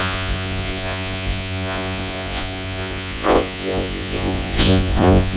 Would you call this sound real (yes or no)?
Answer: no